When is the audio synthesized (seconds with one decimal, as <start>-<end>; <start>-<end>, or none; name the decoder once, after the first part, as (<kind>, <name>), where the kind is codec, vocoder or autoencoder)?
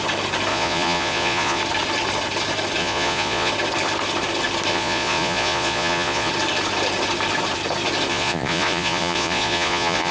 0.5-1.6 (vocoder, Vocos); 2.8-3.5; 4.7-6.3; 8.1-10.1